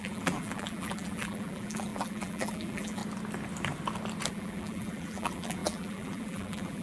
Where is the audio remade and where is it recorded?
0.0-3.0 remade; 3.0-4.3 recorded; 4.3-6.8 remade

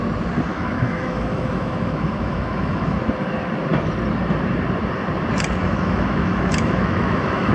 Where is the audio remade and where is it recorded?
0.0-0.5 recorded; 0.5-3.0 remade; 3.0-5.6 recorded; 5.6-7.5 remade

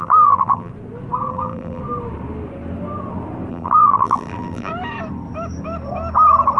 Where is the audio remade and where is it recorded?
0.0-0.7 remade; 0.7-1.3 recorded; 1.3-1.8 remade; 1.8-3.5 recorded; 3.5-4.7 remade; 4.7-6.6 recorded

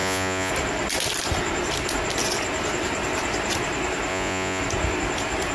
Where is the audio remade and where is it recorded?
0.0-0.5 remade; 0.5-4.1 recorded; 4.1-4.6 remade; 4.6-5.5 recorded

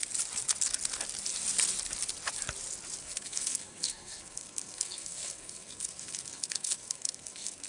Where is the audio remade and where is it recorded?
0.0-3.0 recorded; 3.0-7.7 remade